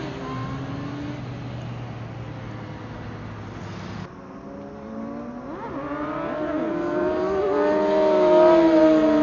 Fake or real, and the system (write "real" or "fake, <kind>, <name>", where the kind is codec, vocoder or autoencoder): real